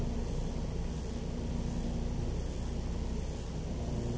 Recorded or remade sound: recorded